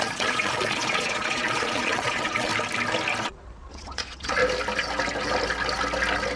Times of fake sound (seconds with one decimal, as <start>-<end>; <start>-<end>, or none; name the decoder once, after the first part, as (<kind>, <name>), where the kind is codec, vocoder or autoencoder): 0.0-2.5 (vocoder, Vocos); 3.2-4.4